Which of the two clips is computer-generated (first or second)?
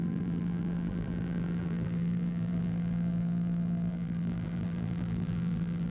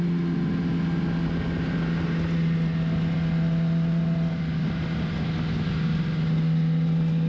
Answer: first